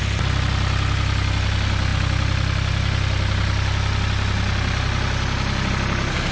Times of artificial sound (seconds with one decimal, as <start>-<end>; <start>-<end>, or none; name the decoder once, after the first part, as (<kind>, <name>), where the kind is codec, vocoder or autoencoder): none

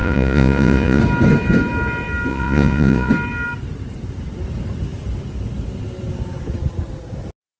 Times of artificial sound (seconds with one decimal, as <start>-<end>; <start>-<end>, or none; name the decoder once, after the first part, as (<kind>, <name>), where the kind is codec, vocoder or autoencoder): 0.0-1.0 (vocoder, Vocos); 2.3-3.1

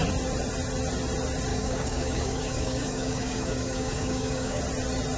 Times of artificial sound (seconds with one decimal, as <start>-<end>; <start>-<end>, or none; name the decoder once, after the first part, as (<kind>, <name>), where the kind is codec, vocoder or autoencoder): 1.5-4.6 (codec, DAC)

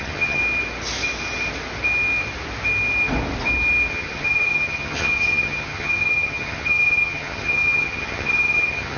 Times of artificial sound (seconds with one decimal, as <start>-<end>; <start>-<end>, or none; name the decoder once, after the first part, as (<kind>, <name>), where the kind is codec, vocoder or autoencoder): 0.0-0.4 (vocoder, HiFi-GAN); 3.9-9.0

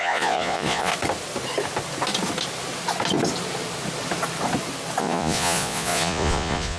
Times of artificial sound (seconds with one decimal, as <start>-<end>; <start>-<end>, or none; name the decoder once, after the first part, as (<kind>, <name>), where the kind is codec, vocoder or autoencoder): 0.0-0.9 (vocoder, Vocos); 5.0-6.8